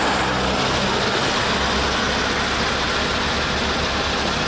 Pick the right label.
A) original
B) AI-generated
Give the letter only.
A